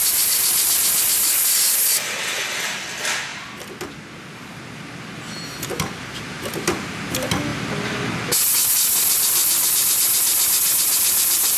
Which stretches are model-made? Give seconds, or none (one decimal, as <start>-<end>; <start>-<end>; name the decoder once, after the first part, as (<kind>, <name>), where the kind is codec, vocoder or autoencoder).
none